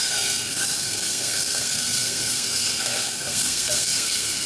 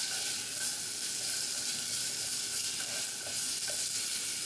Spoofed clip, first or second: first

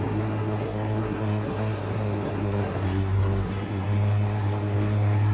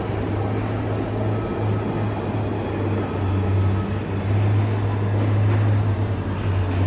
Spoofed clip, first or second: first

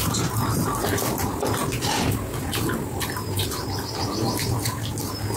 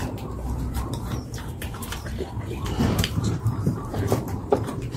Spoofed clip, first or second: second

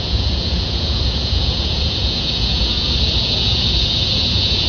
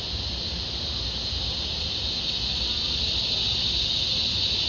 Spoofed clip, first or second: first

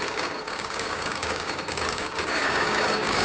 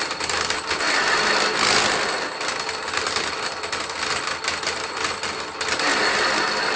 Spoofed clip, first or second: first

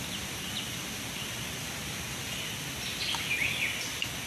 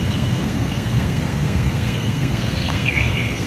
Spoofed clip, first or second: second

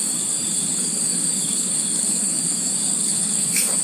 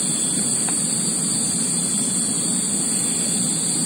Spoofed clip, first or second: first